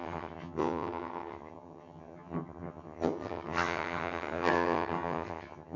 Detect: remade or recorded remade